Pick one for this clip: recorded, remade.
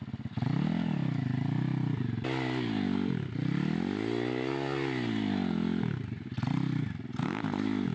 recorded